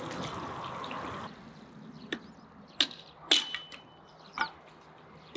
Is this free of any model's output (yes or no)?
yes